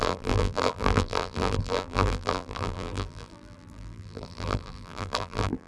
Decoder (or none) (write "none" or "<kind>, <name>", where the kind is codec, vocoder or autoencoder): vocoder, BigVGAN v2